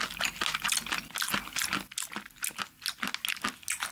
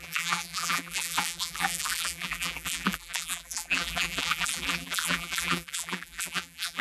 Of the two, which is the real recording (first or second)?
first